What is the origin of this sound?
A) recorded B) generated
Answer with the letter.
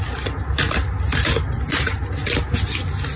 A